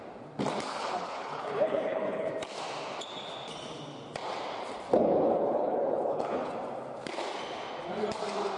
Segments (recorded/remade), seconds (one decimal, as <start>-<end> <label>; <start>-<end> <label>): 0.0-0.7 recorded; 0.7-2.3 remade; 2.3-5.0 recorded; 5.0-6.5 remade; 6.5-8.6 recorded